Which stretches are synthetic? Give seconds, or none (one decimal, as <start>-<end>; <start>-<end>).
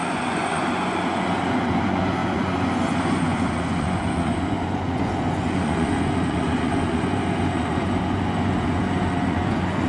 0.0-9.9